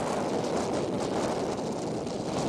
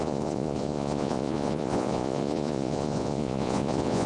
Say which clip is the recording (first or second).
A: first